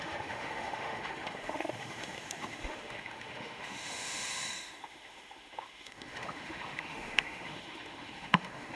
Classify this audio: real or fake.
fake